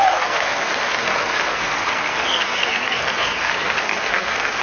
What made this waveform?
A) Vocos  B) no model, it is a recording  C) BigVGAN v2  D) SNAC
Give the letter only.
D